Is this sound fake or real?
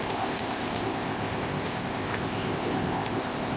fake